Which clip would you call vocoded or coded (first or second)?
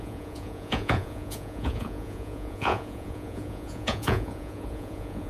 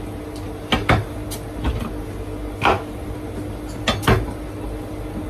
first